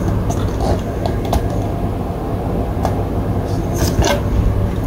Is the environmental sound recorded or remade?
recorded